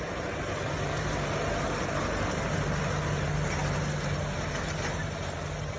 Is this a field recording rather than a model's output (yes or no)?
yes